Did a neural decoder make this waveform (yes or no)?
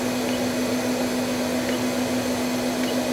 no